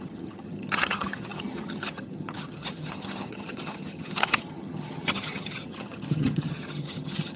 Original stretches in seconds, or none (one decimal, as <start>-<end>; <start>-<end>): none